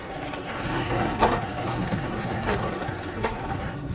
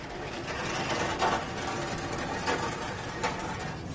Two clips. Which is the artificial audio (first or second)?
first